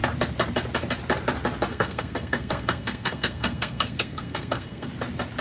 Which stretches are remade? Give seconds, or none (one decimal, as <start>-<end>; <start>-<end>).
1.7-4.9